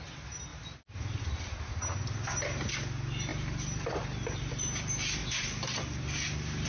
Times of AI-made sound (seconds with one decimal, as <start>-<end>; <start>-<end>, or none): 0.5-1.2; 3.3-4.5; 5.2-5.8

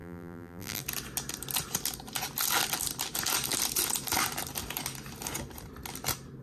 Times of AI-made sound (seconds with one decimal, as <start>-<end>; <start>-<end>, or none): 0.0-0.8

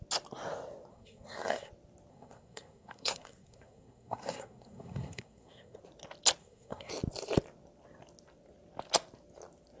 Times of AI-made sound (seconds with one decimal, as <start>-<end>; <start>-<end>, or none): 0.9-1.7; 2.1-5.8; 6.4-6.9

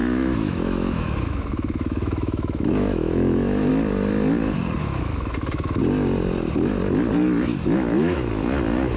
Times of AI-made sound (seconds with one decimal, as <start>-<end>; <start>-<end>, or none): 0.0-3.7; 4.8-5.8; 7.5-8.3

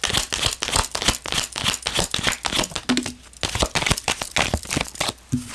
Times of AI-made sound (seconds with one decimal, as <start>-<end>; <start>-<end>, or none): none

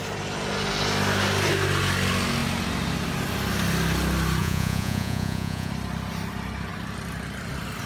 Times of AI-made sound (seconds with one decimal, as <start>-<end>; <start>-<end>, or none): 4.4-5.7